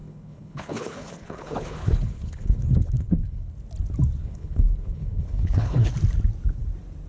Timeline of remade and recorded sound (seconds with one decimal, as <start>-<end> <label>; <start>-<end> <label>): 0.0-3.5 remade; 3.5-4.2 recorded; 4.2-5.9 remade; 5.9-7.1 recorded